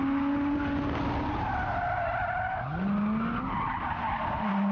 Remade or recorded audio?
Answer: recorded